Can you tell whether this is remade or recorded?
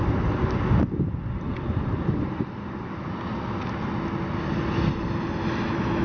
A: recorded